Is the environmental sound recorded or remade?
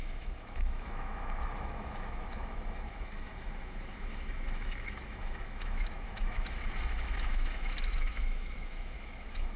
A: remade